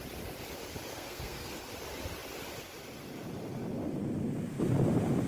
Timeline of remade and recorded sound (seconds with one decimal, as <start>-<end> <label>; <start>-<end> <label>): 0.0-0.9 recorded; 0.9-1.6 remade; 1.6-5.3 recorded